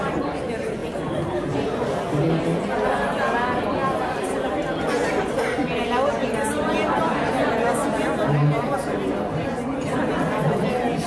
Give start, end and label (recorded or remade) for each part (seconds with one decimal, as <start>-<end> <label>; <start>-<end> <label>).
0.0-6.2 recorded; 6.2-7.5 remade; 7.5-11.1 recorded